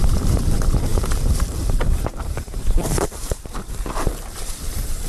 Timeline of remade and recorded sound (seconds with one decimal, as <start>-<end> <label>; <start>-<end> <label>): 0.0-5.1 remade

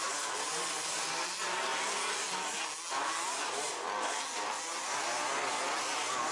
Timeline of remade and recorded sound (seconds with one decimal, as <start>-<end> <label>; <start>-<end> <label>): 0.0-6.3 recorded